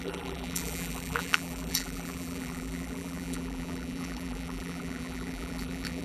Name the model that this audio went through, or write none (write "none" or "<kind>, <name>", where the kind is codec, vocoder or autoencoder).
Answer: vocoder, BigVGAN v2